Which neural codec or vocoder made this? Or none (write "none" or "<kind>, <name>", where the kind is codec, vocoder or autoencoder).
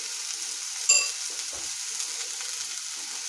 none